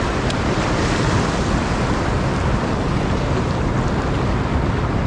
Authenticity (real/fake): real